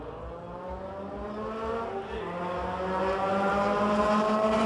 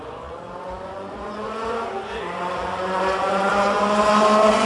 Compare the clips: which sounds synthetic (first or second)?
second